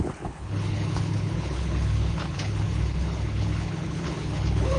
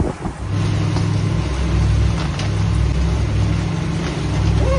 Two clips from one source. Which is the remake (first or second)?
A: first